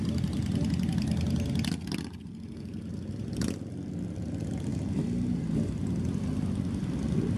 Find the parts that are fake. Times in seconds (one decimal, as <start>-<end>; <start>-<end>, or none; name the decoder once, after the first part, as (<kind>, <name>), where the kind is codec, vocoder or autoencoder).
none